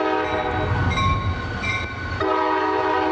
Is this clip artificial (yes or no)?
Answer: no